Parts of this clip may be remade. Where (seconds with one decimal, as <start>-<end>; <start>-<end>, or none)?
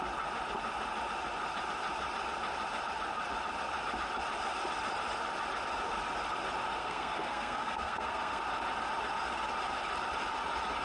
6.8-8.4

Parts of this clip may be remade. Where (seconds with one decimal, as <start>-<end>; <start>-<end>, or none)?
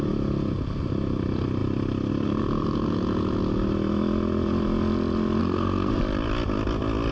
5.4-6.0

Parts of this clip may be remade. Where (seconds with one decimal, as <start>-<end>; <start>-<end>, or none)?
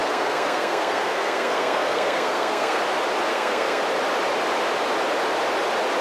0.0-2.8; 3.3-3.8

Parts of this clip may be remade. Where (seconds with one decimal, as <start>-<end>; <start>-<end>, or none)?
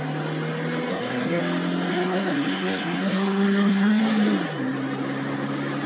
0.9-1.4; 1.9-4.0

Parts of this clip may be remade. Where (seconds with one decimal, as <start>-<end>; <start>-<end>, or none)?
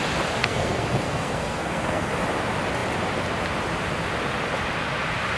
0.4-2.1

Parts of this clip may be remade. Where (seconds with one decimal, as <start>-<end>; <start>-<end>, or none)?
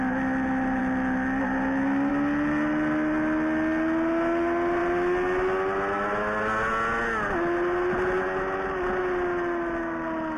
none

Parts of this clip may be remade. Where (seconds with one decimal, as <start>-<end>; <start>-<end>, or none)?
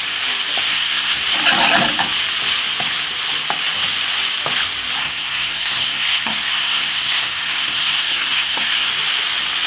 0.7-1.2; 5.0-8.9